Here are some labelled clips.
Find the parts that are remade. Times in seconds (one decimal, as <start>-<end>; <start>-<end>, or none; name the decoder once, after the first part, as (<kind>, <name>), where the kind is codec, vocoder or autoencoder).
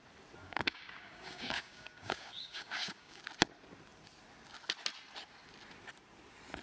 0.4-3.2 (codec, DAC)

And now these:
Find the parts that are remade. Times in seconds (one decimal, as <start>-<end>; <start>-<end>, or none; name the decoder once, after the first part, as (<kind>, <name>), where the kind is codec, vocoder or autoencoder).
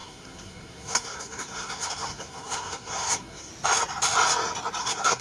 0.0-3.5 (codec, SNAC); 4.8-5.2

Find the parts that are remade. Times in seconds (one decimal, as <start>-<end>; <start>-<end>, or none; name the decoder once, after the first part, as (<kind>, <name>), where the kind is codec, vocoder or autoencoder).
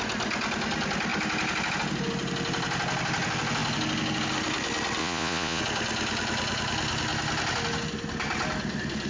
5.0-5.6 (vocoder, Vocos)